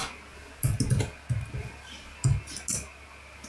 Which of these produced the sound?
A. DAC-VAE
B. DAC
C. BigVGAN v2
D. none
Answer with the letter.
D